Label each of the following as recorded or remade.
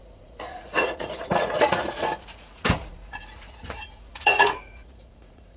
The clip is remade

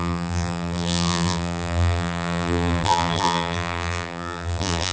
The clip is remade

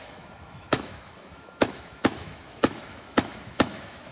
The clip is remade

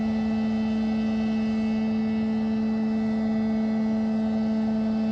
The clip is recorded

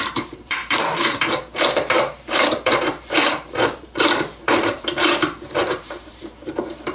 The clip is remade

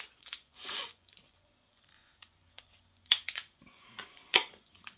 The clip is remade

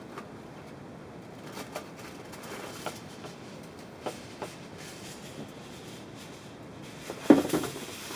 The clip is recorded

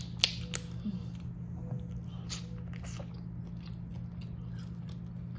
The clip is recorded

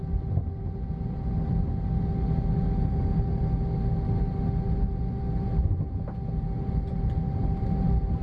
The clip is recorded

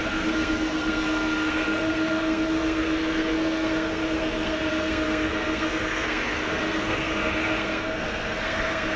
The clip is remade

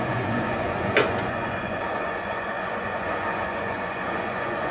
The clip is remade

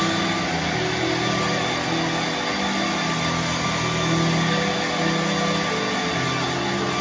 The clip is recorded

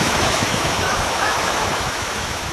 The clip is remade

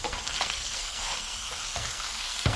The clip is remade